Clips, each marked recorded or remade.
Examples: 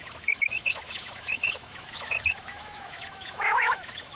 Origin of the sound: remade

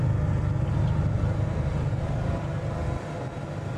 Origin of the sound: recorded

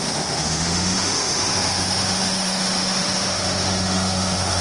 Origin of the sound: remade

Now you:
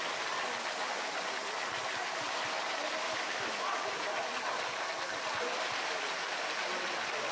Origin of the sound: recorded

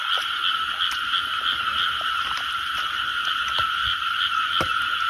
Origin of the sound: recorded